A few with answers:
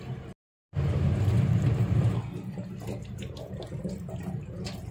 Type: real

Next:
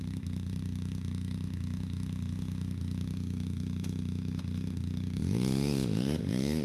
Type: fake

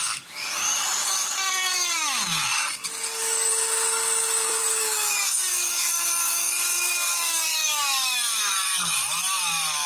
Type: fake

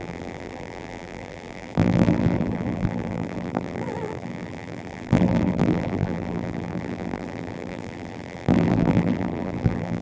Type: fake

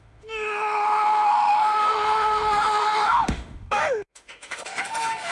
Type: fake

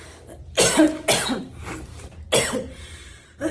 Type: real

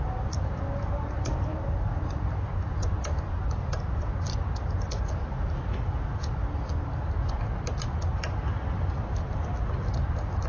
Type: real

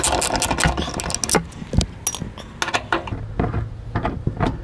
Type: real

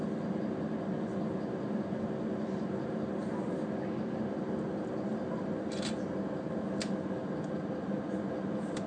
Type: real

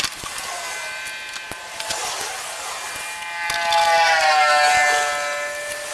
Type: real